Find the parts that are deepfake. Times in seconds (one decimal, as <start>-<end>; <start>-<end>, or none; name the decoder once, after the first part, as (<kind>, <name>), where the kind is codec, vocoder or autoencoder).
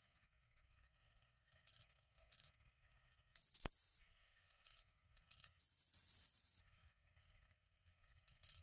0.0-3.4 (codec, SNAC); 4.0-5.6; 6.6-8.6